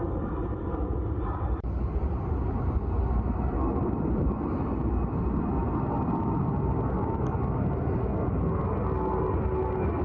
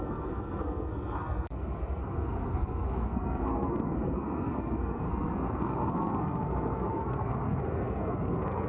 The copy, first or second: second